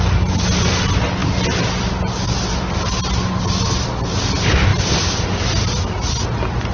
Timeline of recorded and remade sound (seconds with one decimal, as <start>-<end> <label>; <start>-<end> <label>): 0.0-6.7 recorded